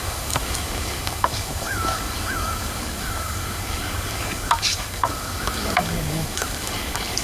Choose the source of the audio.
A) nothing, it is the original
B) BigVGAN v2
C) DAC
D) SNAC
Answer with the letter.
C